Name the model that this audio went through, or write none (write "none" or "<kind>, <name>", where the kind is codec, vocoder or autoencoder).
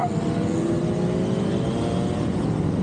none